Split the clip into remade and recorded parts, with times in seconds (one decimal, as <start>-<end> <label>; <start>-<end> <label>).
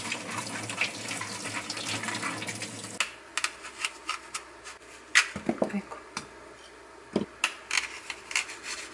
0.0-8.9 recorded